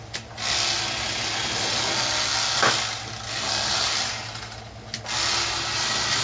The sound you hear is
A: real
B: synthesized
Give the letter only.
A